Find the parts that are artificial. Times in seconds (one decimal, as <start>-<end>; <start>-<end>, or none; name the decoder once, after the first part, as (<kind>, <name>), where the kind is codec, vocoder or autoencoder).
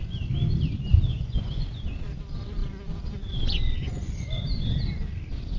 1.1-1.8 (vocoder, Vocos); 3.8-4.4